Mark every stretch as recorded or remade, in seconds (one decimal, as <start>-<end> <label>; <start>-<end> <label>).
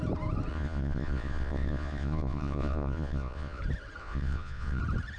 0.0-0.5 recorded; 0.5-3.6 remade; 3.6-4.0 recorded; 4.0-4.8 remade; 4.8-5.2 recorded